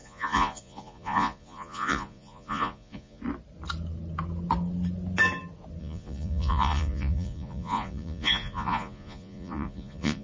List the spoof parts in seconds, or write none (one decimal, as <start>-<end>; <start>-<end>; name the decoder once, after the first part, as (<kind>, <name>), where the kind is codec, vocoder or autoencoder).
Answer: 0.0-3.2 (vocoder, Vocos); 5.8-10.2